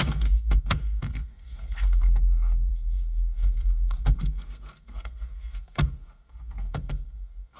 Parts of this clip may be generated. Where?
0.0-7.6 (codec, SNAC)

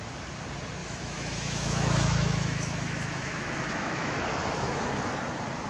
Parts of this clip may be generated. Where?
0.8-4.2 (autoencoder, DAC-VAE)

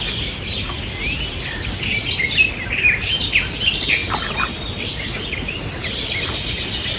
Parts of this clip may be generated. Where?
none

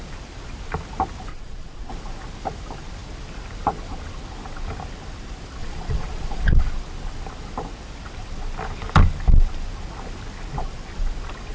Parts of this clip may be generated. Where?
1.3-1.9 (vocoder, Vocos); 5.6-6.7

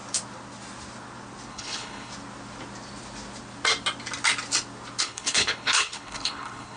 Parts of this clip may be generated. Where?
1.5-2.1 (codec, HILCodec); 5.0-6.8